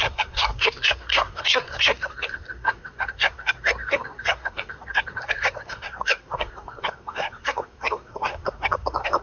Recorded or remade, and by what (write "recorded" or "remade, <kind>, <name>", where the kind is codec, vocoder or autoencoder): remade, codec, SNAC